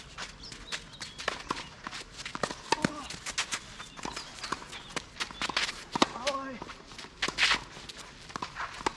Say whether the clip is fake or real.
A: real